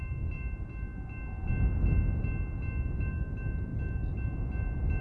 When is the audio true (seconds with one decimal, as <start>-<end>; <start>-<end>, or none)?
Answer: 0.0-5.0